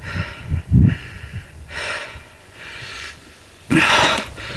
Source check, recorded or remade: remade